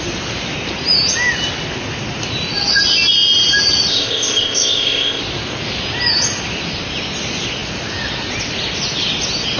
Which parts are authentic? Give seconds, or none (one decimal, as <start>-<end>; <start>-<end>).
0.0-3.9; 5.2-9.6